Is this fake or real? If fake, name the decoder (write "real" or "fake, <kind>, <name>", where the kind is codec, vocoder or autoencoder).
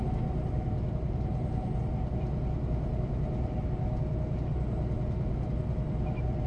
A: real